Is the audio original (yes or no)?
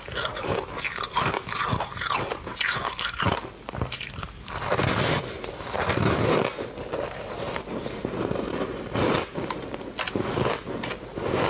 yes